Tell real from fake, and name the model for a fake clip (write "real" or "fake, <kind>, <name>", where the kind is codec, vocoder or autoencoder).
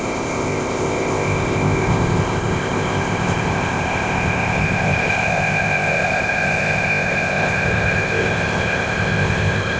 fake, codec, ZipCodec